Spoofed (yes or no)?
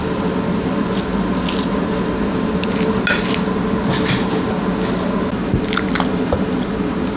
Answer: no